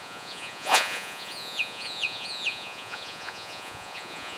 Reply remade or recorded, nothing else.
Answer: remade